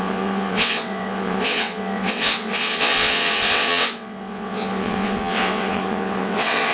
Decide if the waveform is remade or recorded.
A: remade